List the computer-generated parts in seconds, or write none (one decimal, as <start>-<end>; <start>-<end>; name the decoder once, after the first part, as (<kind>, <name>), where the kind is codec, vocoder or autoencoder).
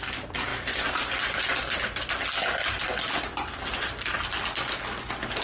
none